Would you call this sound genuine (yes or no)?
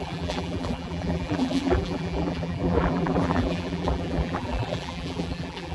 no